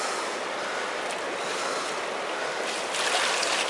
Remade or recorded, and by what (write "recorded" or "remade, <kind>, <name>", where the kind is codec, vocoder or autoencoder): recorded